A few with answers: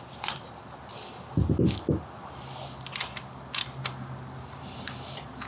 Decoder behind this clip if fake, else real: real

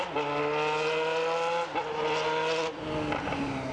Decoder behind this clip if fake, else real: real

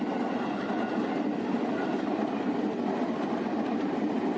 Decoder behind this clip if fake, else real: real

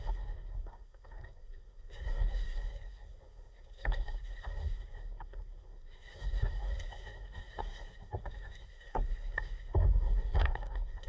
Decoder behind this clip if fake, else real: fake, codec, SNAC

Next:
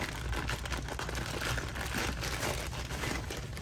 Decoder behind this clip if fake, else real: real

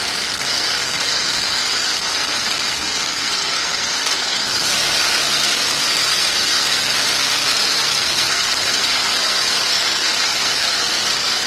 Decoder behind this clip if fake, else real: fake, codec, SNAC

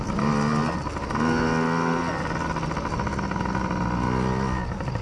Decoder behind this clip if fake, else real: real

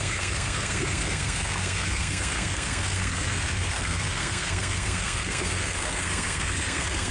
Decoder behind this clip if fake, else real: fake, codec, SNAC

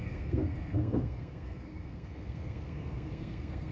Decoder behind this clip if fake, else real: fake, codec, SNAC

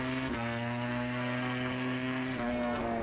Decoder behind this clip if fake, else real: fake, codec, SNAC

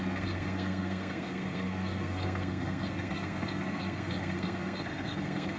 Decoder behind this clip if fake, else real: fake, codec, SNAC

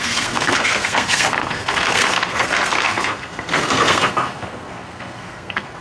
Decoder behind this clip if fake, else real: fake, codec, SNAC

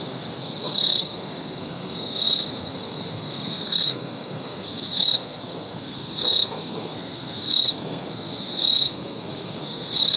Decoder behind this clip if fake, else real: fake, codec, SNAC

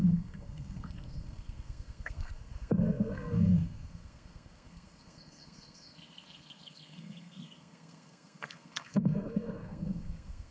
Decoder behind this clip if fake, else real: fake, codec, SNAC